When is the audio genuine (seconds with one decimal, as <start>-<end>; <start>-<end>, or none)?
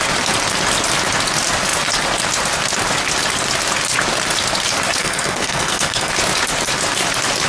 0.0-5.0; 6.1-7.5